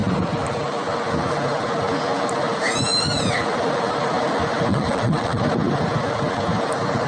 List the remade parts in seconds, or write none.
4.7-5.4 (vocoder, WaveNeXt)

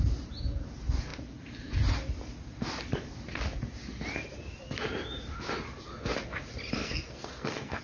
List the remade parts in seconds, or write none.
6.8-7.8 (codec, SNAC)

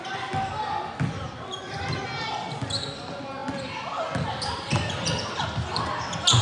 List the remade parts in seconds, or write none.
none

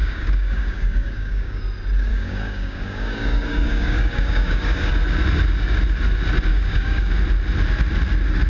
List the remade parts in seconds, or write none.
0.0-1.6 (codec, DAC); 2.1-4.9; 6.5-7.1

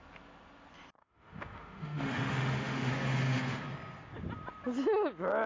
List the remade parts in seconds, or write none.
1.0-2.9 (autoencoder, DAC-VAE)

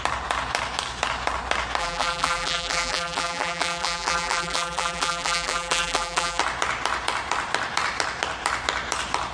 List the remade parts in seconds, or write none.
1.8-6.4 (vocoder, BigVGAN v2)